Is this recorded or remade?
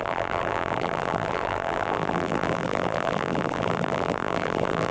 remade